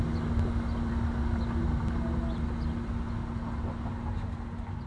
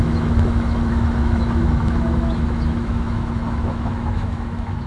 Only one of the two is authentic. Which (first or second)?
first